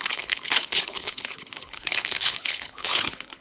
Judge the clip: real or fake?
fake